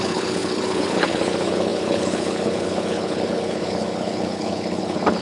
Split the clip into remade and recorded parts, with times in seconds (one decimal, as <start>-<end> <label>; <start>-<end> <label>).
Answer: 0.0-5.2 remade